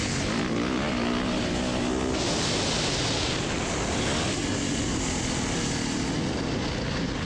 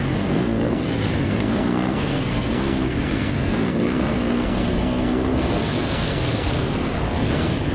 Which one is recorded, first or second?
first